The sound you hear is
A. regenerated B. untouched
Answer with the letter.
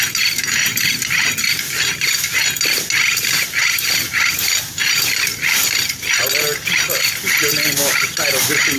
B